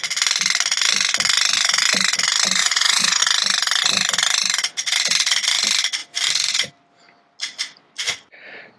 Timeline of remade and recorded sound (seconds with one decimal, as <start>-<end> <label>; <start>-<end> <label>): 0.0-2.6 recorded; 2.6-3.2 remade; 3.2-8.8 recorded